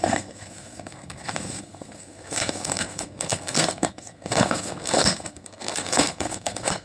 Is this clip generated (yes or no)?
yes